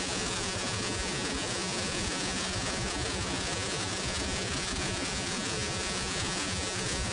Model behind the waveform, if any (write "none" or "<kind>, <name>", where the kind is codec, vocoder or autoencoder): vocoder, Vocos